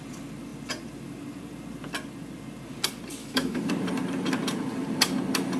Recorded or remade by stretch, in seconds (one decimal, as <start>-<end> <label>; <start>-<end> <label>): 0.0-3.2 recorded; 3.2-3.7 remade; 3.7-5.6 recorded